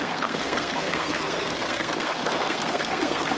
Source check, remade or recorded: remade